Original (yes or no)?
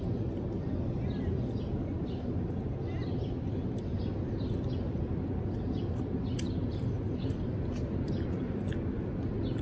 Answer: yes